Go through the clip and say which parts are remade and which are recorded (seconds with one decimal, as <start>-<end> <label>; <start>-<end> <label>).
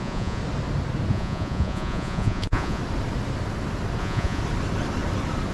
0.0-0.4 remade; 0.4-1.1 recorded; 1.1-2.8 remade; 2.8-4.0 recorded; 4.0-4.4 remade; 4.4-5.5 recorded